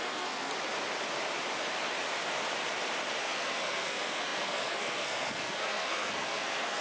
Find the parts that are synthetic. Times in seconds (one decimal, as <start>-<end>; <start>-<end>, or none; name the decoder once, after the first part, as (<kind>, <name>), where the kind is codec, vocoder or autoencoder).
0.0-0.5 (codec, SNAC); 3.2-6.8